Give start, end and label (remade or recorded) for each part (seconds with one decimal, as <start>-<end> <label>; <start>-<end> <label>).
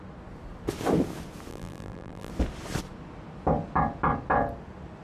0.0-1.5 recorded; 1.5-2.3 remade; 2.3-5.0 recorded